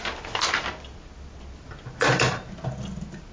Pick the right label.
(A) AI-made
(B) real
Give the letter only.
B